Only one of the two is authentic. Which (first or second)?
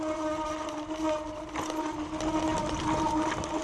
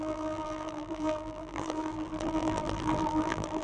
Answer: first